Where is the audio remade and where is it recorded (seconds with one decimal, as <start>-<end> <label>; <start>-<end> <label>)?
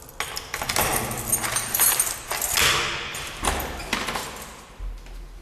0.0-3.1 recorded; 3.1-3.8 remade; 3.8-5.4 recorded